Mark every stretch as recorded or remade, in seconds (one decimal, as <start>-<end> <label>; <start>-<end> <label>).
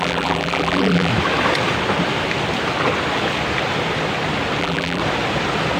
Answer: 0.0-1.1 remade; 1.1-4.6 recorded; 4.6-5.0 remade; 5.0-5.8 recorded